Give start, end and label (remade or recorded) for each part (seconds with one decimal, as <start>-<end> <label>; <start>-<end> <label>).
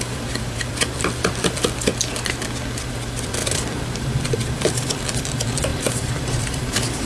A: 0.0-1.9 remade; 1.9-2.9 recorded; 2.9-7.1 remade